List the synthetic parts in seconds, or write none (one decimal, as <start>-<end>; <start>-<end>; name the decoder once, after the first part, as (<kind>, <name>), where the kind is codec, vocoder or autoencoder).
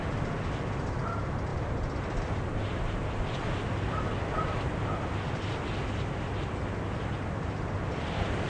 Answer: none